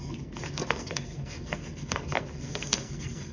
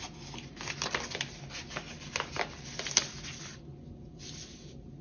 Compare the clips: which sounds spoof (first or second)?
first